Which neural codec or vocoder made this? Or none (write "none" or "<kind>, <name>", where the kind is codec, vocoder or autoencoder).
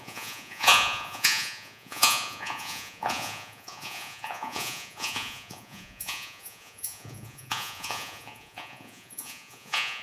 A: vocoder, Vocos